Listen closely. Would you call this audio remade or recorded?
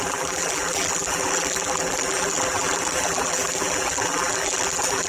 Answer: remade